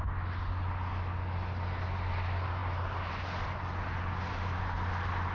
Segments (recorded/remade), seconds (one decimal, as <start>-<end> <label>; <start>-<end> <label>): 0.0-5.3 recorded